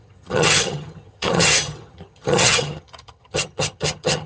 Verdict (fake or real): fake